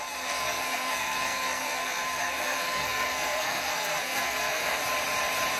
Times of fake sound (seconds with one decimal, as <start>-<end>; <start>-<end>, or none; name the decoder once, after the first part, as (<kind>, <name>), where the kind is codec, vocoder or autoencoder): 0.0-4.8 (codec, SNAC)